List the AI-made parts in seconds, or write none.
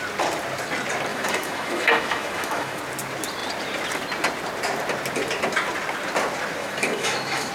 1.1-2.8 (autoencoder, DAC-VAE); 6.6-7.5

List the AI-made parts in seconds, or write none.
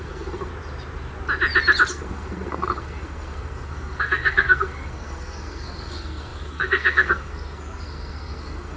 0.0-0.5 (codec, SNAC); 1.9-8.8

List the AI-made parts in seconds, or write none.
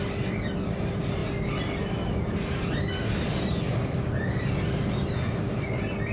none